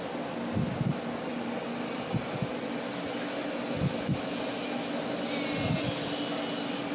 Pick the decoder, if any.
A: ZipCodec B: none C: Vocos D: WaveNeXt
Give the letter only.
B